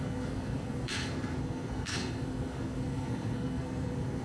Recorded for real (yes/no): no